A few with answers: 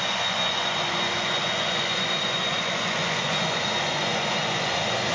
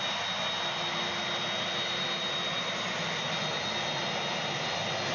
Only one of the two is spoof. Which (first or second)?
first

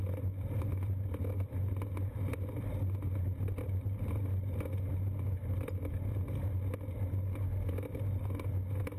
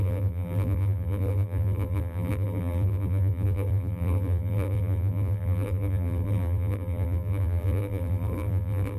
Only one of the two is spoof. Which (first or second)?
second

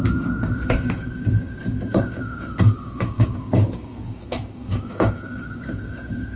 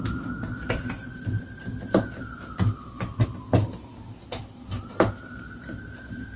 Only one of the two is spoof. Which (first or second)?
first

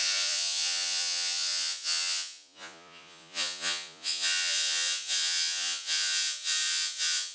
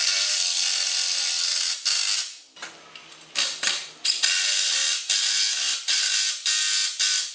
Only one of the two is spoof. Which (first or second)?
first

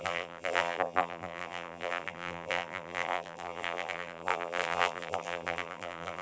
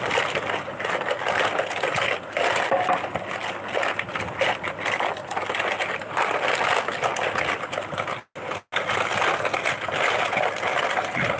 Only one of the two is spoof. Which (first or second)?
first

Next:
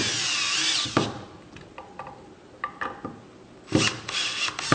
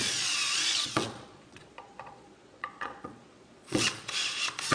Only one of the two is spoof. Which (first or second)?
second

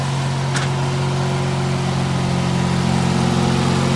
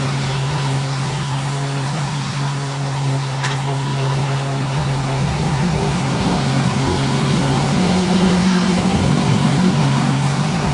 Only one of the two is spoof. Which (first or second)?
second